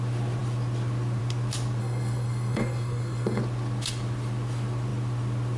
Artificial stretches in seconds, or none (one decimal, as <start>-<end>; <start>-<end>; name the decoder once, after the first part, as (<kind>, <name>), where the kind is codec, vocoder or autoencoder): 1.8-3.4 (codec, SNAC)